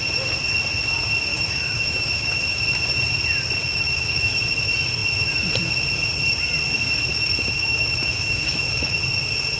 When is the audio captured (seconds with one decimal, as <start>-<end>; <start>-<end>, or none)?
0.0-1.3; 2.6-3.6; 4.3-7.1; 9.0-9.6